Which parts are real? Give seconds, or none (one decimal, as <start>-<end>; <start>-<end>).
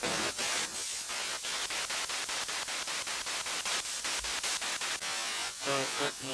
0.0-5.3